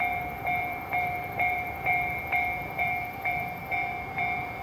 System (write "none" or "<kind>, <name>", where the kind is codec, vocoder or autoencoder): vocoder, BigVGAN v2